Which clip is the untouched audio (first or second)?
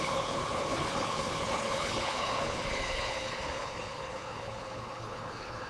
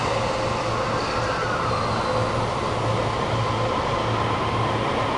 second